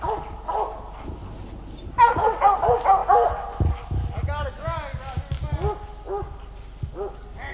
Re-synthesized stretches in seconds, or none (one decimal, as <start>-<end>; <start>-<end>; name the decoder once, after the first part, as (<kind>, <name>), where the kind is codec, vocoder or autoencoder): none